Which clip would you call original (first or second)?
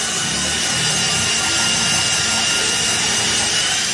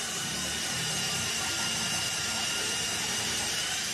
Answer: first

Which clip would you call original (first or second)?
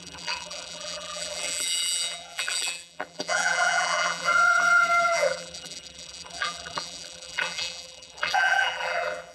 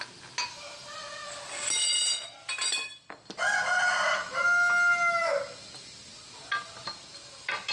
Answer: second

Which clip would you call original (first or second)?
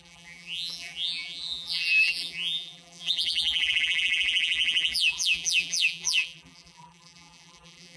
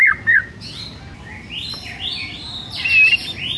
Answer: second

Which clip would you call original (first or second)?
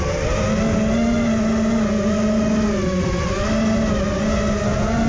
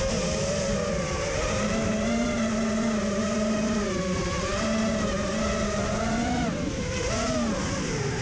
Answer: first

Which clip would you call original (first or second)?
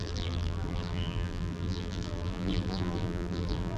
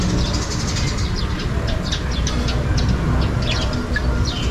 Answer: second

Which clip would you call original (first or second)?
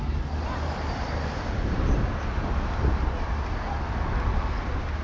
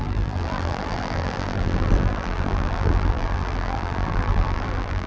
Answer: first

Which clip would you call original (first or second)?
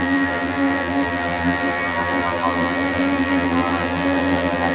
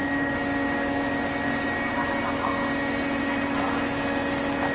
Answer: second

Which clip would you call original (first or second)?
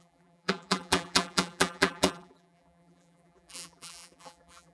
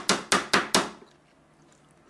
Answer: second